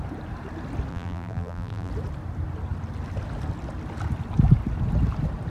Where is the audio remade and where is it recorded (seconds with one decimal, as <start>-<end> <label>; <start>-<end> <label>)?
0.0-0.9 recorded; 0.9-1.9 remade; 1.9-5.5 recorded